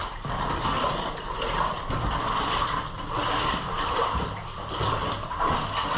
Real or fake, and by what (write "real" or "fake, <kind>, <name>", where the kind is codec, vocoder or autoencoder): real